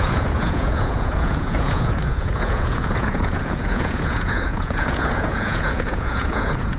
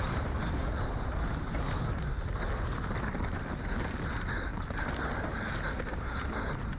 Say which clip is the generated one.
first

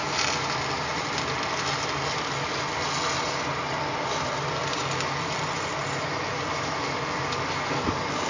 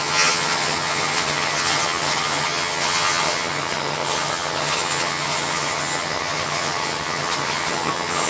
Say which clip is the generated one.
second